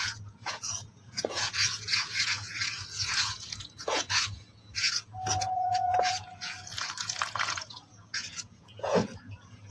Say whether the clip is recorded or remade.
remade